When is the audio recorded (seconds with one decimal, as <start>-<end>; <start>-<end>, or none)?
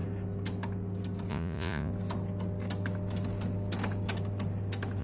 0.0-1.3; 1.9-5.0